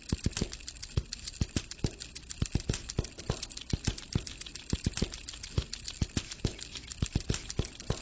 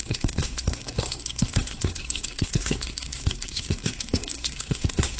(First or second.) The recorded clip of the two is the first